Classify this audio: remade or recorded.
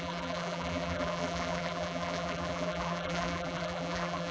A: remade